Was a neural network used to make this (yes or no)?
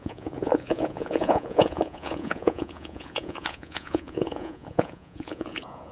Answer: yes